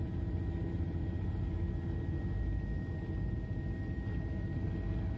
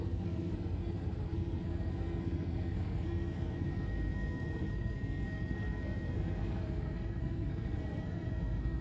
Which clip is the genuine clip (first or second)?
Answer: first